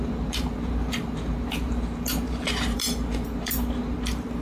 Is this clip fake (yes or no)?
yes